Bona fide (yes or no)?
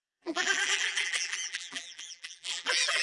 no